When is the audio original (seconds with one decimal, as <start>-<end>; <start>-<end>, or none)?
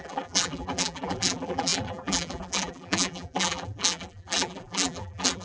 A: none